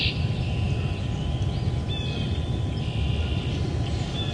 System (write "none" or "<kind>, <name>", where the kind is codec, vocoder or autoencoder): none